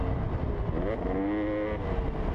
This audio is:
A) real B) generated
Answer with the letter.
A